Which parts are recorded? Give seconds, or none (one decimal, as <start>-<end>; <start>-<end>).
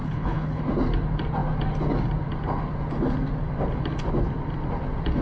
0.6-5.2